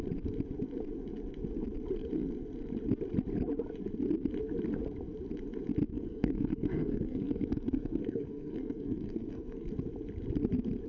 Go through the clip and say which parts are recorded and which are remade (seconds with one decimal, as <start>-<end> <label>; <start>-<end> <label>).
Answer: 0.0-5.9 recorded; 5.9-9.7 remade; 9.7-10.9 recorded